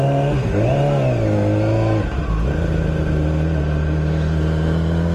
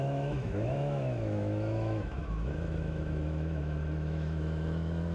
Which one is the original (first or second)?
first